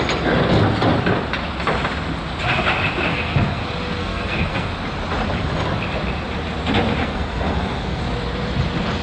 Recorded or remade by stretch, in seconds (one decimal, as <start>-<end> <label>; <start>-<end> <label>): 0.0-3.1 recorded; 3.1-3.6 remade; 3.6-4.0 recorded; 4.0-4.7 remade; 4.7-7.0 recorded; 7.0-8.0 remade; 8.0-9.0 recorded